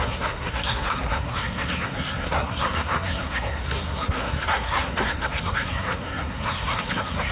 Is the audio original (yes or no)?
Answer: no